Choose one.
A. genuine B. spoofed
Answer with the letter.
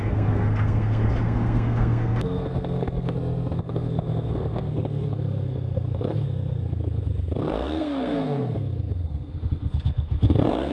B